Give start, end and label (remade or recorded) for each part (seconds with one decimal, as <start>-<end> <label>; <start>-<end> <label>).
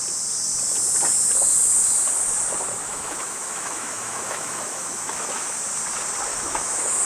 0.0-2.8 recorded; 2.8-5.6 remade; 5.6-6.3 recorded; 6.3-7.0 remade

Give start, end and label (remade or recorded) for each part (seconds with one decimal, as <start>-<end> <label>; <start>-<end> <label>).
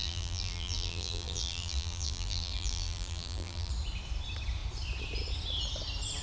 0.0-3.7 remade; 3.7-6.2 recorded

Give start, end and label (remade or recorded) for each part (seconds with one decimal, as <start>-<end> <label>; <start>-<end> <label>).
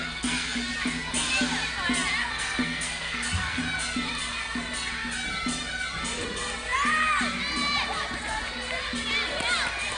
0.0-0.7 remade; 0.7-2.2 recorded; 2.2-3.6 remade; 3.6-10.0 recorded